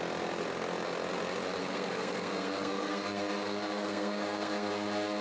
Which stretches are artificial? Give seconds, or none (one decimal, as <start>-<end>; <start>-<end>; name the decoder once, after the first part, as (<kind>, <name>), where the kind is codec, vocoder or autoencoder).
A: 1.6-4.7 (codec, SNAC)